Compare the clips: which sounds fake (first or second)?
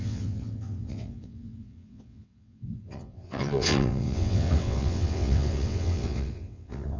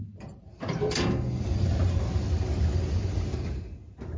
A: first